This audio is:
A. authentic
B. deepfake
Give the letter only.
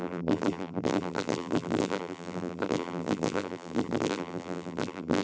B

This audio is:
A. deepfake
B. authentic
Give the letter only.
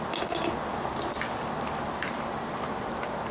B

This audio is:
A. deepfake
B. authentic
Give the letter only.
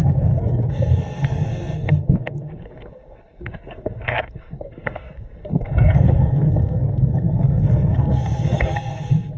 A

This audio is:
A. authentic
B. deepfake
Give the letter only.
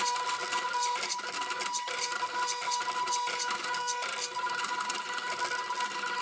A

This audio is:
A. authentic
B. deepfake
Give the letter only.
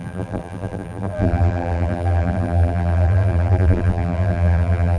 B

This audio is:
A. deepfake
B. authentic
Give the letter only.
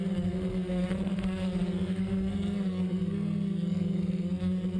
A